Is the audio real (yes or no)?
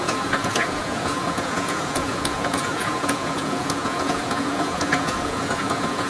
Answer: no